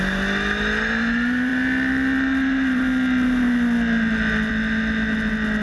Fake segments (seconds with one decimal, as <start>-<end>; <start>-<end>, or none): none